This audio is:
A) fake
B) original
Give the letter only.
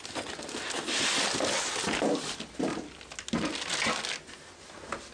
B